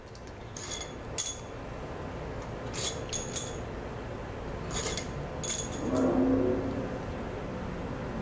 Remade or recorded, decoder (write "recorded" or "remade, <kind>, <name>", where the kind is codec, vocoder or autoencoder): recorded